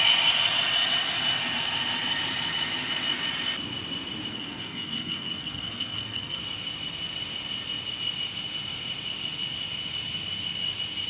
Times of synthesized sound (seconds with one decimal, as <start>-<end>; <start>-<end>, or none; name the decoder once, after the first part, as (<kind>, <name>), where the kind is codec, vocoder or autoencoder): 4.3-6.4 (codec, SNAC)